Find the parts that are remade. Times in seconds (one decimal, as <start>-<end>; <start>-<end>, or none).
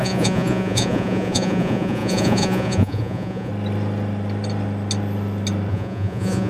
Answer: 0.0-3.5; 5.7-6.5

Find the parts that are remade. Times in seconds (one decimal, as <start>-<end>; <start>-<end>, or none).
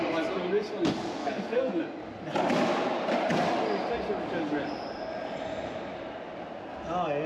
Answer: 1.2-1.8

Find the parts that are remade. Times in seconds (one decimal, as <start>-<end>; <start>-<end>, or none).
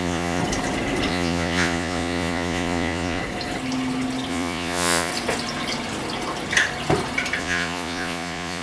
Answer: 0.0-0.4; 1.1-3.2; 4.3-5.1; 7.4-8.6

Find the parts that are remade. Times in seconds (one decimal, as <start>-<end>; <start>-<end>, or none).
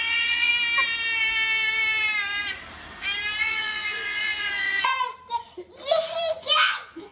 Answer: 0.0-0.5; 3.4-4.9; 6.4-7.1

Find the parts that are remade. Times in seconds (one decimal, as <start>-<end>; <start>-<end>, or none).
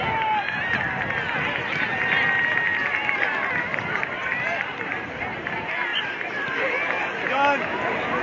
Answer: 3.7-5.3; 5.9-6.7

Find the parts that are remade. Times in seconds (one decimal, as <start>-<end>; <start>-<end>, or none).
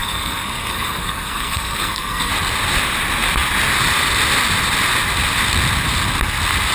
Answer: 0.0-2.3